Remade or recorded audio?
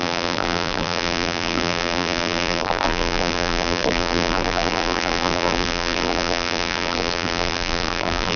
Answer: remade